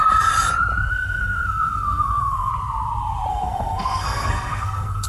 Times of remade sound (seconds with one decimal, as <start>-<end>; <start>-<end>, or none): 0.9-2.5; 3.3-5.1